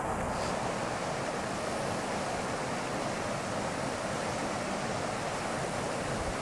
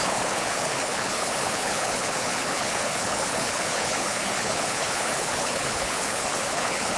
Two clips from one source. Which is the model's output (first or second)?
second